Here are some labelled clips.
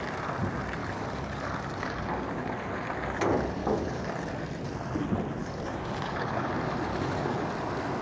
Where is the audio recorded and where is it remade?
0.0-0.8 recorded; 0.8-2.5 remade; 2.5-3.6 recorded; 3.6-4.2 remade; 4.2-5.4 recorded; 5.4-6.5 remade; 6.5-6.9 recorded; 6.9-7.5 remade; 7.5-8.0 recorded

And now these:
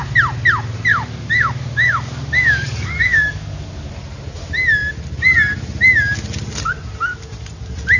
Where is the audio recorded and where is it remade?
0.0-0.9 recorded; 0.9-3.9 remade; 3.9-8.0 recorded

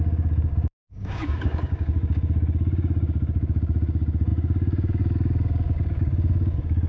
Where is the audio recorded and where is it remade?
0.0-6.9 remade

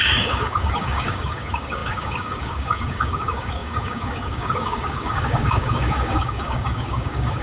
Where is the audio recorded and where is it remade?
0.0-7.4 remade